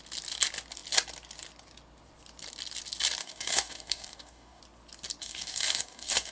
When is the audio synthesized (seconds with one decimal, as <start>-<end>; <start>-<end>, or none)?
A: 3.2-4.6; 5.2-6.3